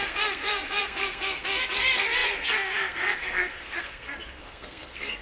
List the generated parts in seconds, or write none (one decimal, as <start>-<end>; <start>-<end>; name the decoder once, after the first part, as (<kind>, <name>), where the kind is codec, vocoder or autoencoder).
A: 0.0-5.2 (codec, SNAC)